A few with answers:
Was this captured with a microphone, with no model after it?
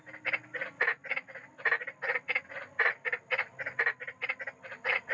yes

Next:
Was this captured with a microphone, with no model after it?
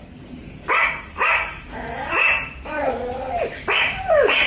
yes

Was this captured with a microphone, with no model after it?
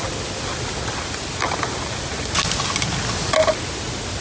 yes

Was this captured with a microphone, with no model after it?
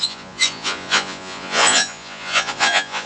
no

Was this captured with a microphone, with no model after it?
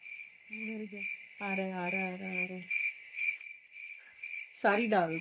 no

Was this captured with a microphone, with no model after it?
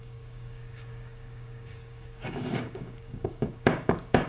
no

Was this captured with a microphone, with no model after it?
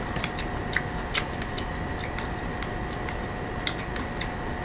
yes